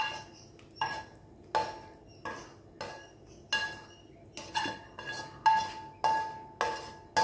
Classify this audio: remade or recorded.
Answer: recorded